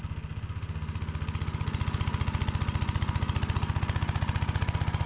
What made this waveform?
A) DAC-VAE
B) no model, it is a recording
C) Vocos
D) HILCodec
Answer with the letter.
B